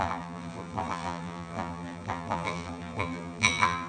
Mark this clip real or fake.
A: fake